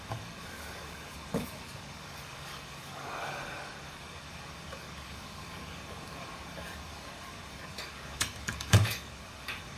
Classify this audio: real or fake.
fake